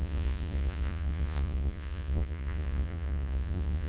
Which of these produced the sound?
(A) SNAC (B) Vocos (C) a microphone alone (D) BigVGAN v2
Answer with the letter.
B